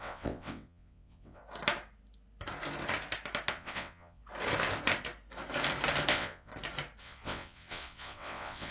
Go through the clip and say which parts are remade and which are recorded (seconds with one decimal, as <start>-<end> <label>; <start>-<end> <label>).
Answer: 0.0-1.4 remade; 1.4-3.5 recorded; 3.5-4.2 remade; 4.2-6.1 recorded; 6.1-6.5 remade; 6.5-7.0 recorded; 7.0-8.7 remade